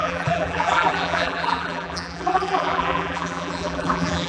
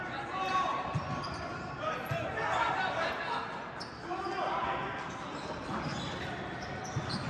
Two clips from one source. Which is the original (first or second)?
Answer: second